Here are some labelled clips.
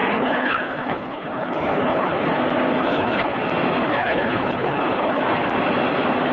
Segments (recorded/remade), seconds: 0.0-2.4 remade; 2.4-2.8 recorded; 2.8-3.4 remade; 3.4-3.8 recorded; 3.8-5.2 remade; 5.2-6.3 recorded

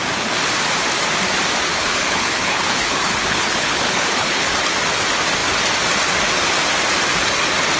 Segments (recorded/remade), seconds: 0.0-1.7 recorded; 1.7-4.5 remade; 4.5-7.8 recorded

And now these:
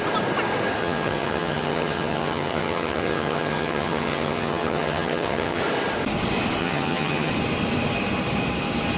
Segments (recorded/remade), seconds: 0.0-0.8 recorded; 0.8-5.6 remade; 5.6-6.6 recorded; 6.6-7.3 remade; 7.3-9.0 recorded

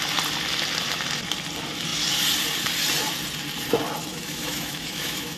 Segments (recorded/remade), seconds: 0.0-4.1 recorded; 4.1-5.4 remade

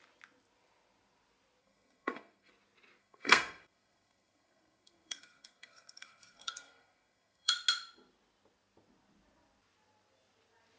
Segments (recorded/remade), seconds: 0.0-1.6 recorded; 1.6-2.5 remade; 2.5-3.0 recorded; 3.0-7.5 remade; 7.5-10.8 recorded

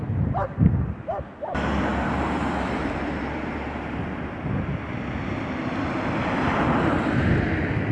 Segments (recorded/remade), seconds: 0.0-1.9 recorded; 1.9-4.4 remade; 4.4-7.9 recorded